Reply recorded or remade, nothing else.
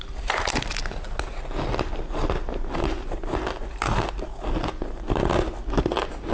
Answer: recorded